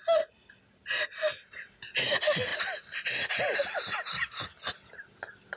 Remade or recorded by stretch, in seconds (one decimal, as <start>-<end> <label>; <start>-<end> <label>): 0.0-5.6 recorded